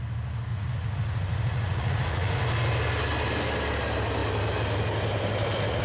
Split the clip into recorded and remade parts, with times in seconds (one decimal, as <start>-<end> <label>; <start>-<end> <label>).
0.0-0.5 recorded; 0.5-2.4 remade; 2.4-5.8 recorded